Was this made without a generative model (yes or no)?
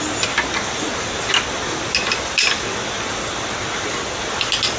yes